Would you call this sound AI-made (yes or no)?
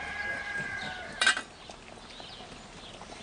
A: no